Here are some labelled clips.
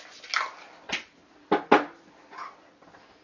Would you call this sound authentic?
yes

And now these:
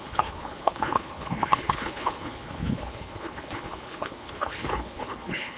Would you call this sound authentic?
no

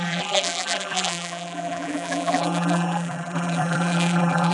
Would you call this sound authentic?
no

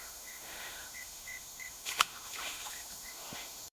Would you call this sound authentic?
no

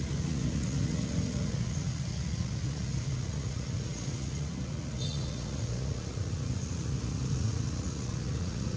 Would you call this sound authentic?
no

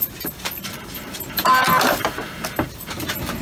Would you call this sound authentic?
no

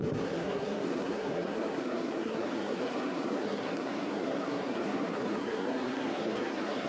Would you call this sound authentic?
no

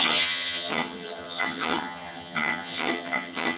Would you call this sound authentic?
no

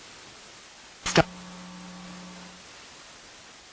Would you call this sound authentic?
yes